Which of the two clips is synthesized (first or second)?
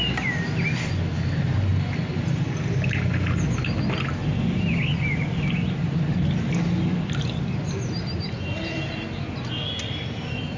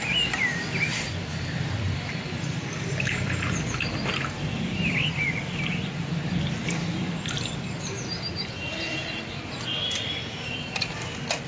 second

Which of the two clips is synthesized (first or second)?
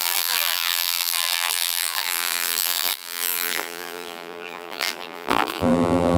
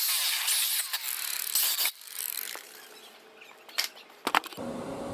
first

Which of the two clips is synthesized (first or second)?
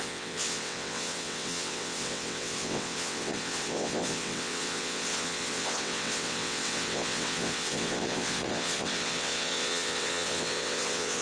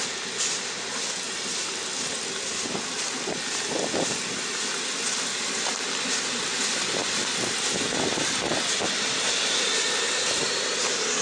first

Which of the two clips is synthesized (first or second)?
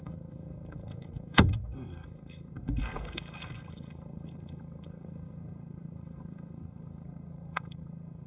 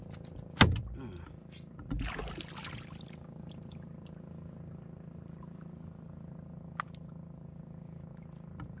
first